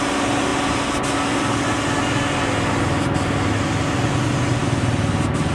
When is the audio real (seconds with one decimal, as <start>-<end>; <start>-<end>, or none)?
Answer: 0.0-5.5